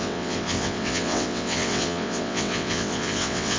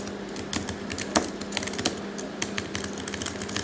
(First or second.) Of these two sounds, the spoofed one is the first